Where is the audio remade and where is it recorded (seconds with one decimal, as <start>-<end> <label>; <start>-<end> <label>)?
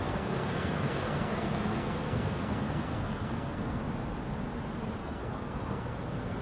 0.0-3.8 remade; 3.8-5.0 recorded; 5.0-6.4 remade